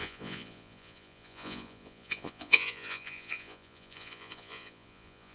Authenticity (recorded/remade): remade